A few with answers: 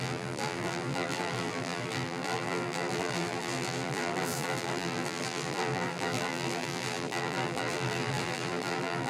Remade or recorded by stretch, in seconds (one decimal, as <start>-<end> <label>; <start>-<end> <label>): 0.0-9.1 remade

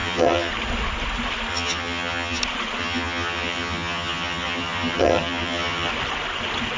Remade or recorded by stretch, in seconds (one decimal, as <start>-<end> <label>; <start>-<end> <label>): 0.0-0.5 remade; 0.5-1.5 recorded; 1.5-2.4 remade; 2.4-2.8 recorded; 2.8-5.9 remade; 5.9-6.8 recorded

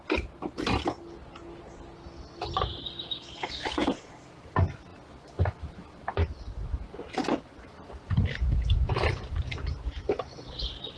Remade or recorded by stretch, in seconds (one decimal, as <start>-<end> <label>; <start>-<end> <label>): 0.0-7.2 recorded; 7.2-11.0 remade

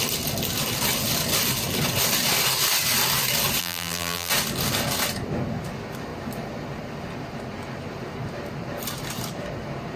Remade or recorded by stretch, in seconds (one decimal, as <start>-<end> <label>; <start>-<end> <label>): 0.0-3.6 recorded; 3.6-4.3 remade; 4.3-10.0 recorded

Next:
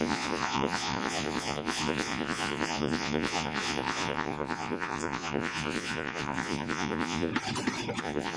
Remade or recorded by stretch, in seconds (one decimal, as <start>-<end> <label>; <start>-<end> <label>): 0.0-7.3 remade; 7.3-8.0 recorded; 8.0-8.4 remade